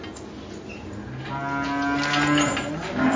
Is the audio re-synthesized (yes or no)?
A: no